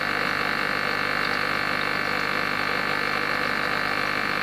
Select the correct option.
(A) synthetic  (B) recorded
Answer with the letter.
B